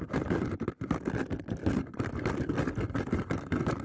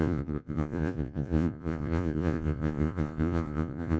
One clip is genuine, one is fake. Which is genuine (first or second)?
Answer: first